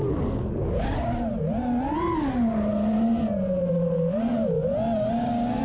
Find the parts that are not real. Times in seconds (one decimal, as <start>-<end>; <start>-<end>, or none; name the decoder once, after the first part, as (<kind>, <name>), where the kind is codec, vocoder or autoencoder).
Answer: none